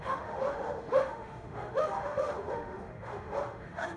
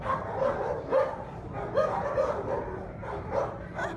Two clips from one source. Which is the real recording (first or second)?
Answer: second